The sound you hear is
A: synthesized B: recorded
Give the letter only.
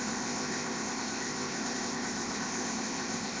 A